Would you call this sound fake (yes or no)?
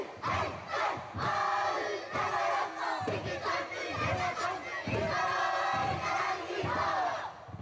no